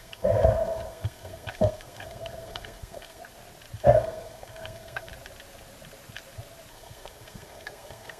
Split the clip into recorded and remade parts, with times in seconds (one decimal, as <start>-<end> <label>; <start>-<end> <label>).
0.0-3.2 remade; 3.2-3.8 recorded; 3.8-5.1 remade; 5.1-6.7 recorded; 6.7-8.2 remade